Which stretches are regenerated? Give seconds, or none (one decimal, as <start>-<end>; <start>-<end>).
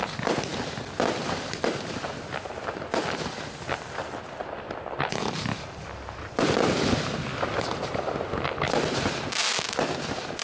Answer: none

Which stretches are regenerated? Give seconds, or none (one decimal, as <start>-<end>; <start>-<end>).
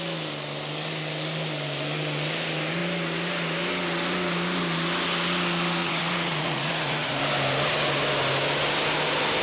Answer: 5.8-7.2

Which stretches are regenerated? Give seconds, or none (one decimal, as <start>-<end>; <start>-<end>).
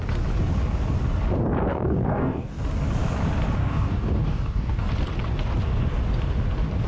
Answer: 1.7-2.6; 3.6-4.9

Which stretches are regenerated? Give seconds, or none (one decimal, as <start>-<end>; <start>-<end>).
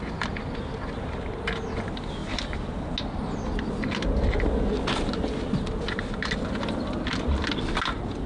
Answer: none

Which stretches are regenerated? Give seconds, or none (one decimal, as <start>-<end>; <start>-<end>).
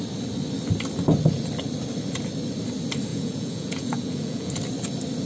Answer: 3.1-4.5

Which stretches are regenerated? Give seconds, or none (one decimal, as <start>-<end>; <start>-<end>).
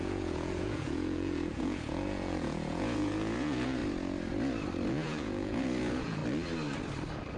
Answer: 0.0-3.8; 4.9-6.2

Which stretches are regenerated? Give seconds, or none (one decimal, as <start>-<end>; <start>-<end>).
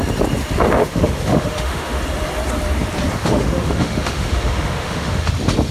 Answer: 0.8-2.0; 3.1-5.3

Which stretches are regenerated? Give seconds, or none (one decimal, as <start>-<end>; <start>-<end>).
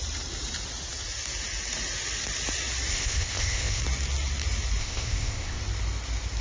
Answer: 2.9-3.8; 4.8-5.6